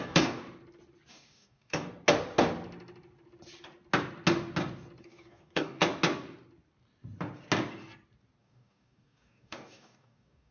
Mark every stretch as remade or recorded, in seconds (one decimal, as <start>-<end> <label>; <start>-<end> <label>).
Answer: 0.0-0.4 remade; 0.4-1.1 recorded; 1.1-1.9 remade; 1.9-5.0 recorded; 5.0-5.8 remade; 5.8-8.4 recorded; 8.4-10.5 remade